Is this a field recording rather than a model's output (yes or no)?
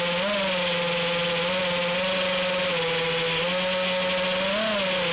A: yes